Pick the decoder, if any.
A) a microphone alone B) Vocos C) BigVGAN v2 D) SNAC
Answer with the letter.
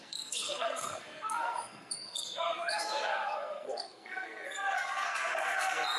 D